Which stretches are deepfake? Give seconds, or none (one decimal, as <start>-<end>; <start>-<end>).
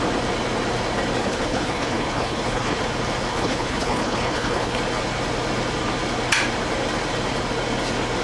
1.2-2.8; 3.3-4.8